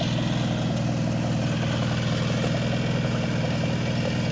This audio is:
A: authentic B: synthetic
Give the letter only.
A